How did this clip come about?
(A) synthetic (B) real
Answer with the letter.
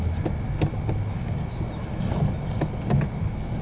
B